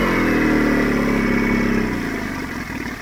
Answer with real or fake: real